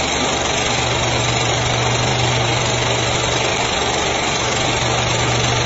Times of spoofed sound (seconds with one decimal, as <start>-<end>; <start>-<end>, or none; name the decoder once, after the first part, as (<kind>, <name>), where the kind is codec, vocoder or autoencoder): 2.1-2.6 (vocoder, BigVGAN v2)